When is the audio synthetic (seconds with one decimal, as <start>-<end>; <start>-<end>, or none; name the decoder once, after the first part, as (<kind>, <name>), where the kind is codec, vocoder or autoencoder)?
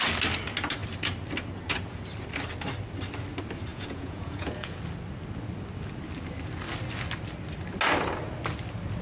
3.7-4.8 (vocoder, Vocos)